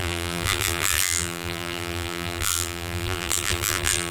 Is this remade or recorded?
remade